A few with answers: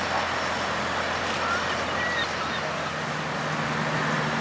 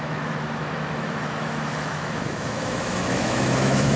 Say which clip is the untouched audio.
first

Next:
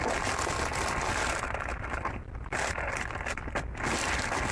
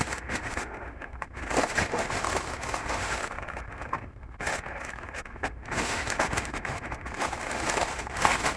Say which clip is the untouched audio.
first